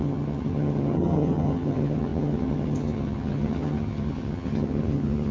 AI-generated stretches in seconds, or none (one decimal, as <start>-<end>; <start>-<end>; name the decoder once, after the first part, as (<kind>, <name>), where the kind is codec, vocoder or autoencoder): 0.0-5.3 (vocoder, HiFi-GAN)